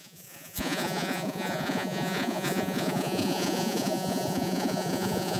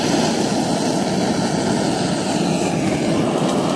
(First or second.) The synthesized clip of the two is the first